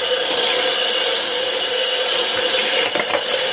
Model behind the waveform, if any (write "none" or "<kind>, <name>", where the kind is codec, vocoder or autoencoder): none